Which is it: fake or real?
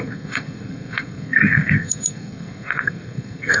fake